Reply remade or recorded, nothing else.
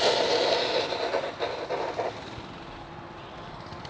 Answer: recorded